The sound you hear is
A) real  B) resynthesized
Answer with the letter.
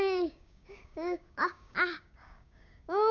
B